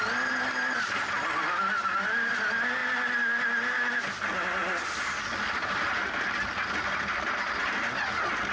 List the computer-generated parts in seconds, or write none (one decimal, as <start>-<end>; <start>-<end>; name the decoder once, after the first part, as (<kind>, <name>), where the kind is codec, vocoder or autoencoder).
none